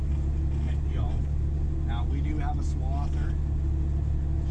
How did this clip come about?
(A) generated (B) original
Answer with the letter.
B